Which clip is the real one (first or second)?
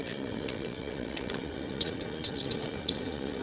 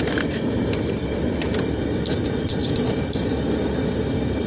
second